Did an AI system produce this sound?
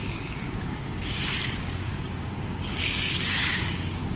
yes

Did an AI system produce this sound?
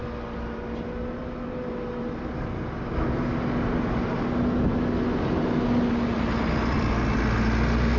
no